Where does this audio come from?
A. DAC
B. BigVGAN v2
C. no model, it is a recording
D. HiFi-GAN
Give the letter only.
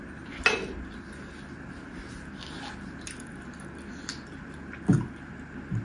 C